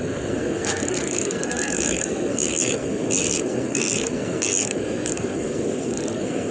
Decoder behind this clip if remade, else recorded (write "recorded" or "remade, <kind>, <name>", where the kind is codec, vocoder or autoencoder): remade, codec, SNAC